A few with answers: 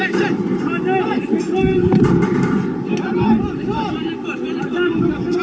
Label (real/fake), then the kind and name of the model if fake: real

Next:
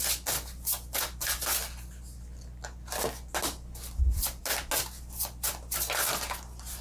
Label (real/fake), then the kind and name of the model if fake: real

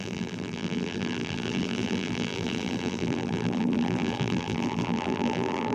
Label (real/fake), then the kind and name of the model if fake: fake, vocoder, BigVGAN v2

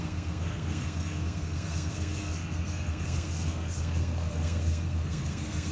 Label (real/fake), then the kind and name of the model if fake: fake, codec, SNAC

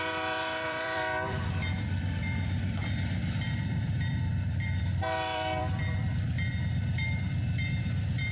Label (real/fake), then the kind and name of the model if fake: fake, vocoder, BigVGAN v2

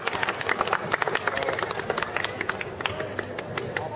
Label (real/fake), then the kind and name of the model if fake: real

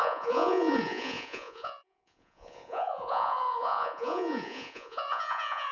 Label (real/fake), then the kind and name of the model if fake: fake, vocoder, Vocos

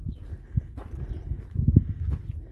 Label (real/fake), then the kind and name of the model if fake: real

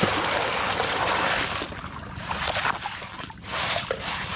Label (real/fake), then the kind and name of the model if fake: real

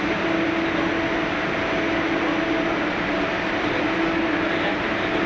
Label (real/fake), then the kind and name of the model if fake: real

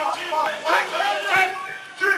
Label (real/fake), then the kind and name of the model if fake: fake, codec, SNAC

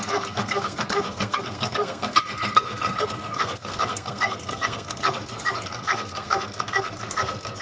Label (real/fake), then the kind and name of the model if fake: fake, codec, SNAC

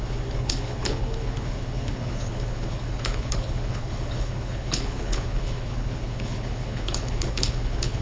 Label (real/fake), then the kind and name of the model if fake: fake, codec, HILCodec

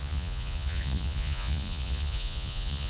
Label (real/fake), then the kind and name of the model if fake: fake, vocoder, Vocos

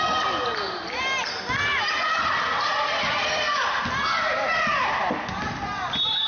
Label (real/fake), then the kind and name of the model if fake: real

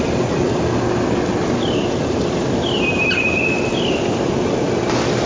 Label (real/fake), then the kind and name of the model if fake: real